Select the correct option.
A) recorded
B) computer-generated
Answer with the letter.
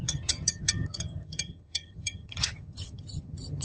B